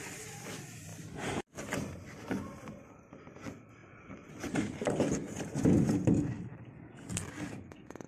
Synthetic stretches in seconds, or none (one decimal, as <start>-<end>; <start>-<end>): 0.9-2.8; 3.8-5.0